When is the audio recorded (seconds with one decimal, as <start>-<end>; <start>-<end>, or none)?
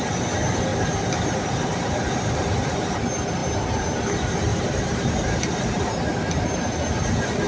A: 0.0-3.4; 4.0-4.5; 5.8-7.5